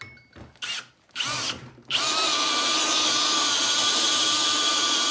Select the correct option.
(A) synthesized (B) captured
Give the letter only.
B